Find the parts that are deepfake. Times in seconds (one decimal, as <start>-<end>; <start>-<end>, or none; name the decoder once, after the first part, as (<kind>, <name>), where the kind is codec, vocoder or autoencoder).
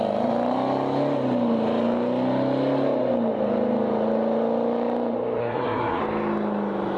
5.4-6.0 (codec, SNAC)